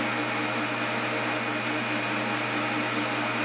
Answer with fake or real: real